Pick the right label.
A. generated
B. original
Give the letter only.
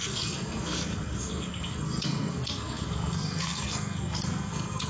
A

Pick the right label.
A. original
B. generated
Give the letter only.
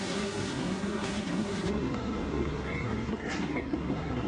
B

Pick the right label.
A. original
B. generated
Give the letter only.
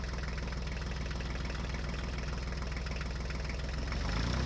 A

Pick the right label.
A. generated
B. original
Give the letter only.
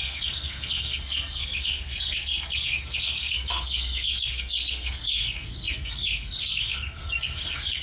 A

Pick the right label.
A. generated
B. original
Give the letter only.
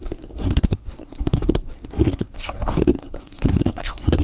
A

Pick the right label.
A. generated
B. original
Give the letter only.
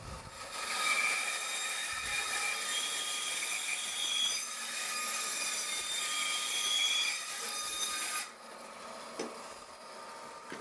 B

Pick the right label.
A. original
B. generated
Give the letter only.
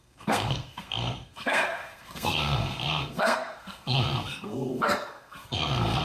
B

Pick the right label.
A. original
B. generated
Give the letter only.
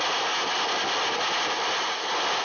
A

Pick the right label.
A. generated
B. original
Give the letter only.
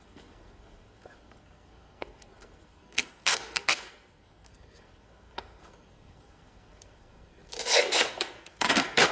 A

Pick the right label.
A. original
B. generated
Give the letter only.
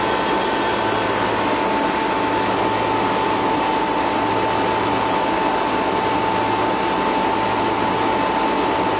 A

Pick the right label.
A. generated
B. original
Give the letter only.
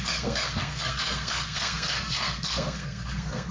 A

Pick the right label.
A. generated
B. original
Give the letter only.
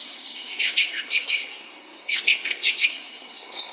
A